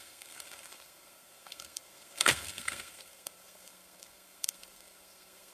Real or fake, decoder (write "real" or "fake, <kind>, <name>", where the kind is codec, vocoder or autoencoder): fake, codec, SNAC